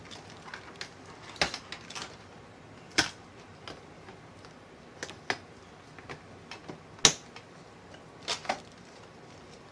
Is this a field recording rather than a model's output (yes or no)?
yes